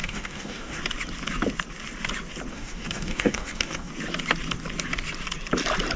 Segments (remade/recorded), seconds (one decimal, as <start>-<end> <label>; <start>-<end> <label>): 0.0-0.8 remade; 0.8-2.5 recorded; 2.5-3.9 remade; 3.9-6.0 recorded

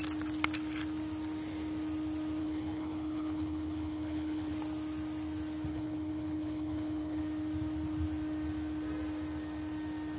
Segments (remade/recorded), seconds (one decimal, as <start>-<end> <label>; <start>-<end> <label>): 0.0-2.4 recorded; 2.4-4.5 remade; 4.5-5.7 recorded; 5.7-7.2 remade; 7.2-10.2 recorded

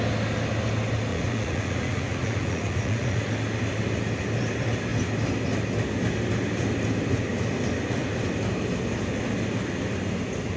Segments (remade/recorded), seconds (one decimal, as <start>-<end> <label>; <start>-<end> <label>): 0.0-1.1 recorded; 1.1-3.3 remade; 3.3-10.6 recorded

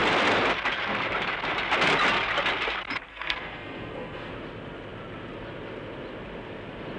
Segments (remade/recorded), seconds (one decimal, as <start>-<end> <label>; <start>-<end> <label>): 0.0-3.1 recorded; 3.1-4.3 remade; 4.3-7.0 recorded

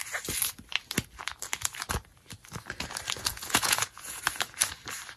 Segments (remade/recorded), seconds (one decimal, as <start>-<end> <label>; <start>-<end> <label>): 0.0-3.3 recorded; 3.3-4.2 remade; 4.2-5.2 recorded

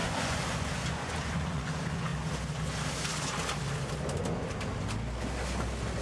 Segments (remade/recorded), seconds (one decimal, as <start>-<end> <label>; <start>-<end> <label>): 0.0-2.1 remade; 2.1-6.0 recorded

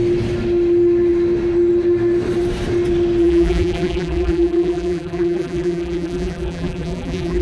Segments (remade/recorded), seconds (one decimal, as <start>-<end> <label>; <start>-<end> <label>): 0.0-3.2 recorded; 3.2-7.4 remade